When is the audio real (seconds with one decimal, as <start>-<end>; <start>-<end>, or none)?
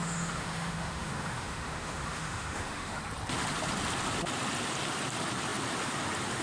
3.0-6.4